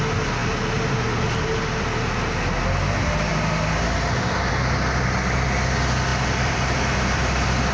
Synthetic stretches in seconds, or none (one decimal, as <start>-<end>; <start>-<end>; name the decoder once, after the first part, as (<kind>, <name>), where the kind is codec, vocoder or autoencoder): 6.1-7.7 (vocoder, BigVGAN v2)